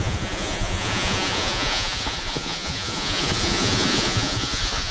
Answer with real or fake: fake